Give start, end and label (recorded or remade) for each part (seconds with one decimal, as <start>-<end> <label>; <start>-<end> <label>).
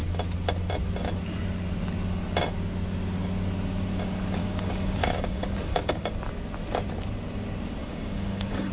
0.0-4.4 recorded; 4.4-6.1 remade; 6.1-7.8 recorded; 7.8-8.7 remade